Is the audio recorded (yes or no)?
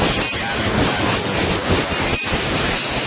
no